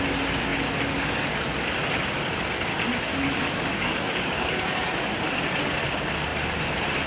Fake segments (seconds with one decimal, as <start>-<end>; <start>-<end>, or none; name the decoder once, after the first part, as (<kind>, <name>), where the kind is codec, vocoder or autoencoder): 0.5-1.4 (codec, DAC); 3.1-4.8